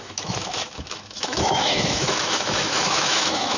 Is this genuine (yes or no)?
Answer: no